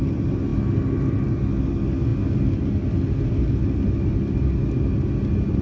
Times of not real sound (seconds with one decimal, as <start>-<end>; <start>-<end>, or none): none